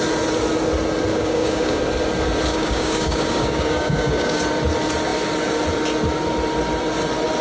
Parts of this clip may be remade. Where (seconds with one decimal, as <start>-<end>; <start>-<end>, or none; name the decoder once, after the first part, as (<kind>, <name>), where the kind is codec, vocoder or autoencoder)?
1.1-1.8 (codec, DAC); 2.5-4.4